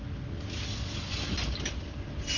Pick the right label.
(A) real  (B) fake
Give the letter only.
A